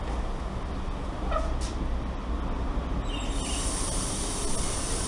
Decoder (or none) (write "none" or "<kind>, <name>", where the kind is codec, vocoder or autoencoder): none